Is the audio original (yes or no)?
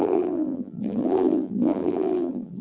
no